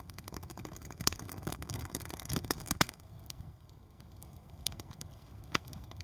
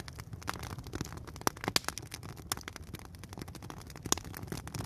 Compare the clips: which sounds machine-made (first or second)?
first